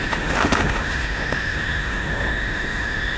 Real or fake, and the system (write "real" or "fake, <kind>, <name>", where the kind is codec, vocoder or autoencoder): fake, autoencoder, DAC-VAE